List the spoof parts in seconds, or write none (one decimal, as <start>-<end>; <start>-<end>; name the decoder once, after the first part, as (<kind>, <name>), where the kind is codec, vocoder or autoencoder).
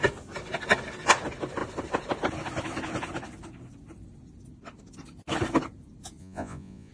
6.2-6.9 (vocoder, Vocos)